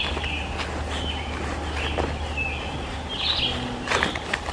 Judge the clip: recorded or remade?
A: recorded